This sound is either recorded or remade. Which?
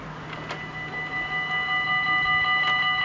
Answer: recorded